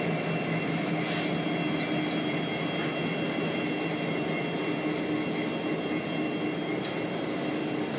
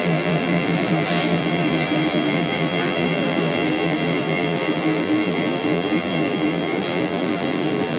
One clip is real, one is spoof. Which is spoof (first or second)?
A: second